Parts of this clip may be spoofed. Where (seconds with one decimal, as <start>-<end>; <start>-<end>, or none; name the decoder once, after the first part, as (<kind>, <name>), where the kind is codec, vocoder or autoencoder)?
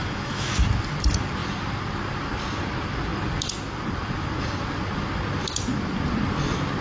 0.0-0.5 (autoencoder, DAC-VAE)